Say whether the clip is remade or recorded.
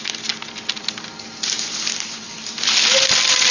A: recorded